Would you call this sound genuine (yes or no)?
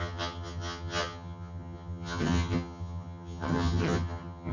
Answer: no